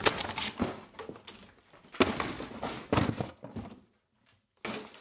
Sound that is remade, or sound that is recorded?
recorded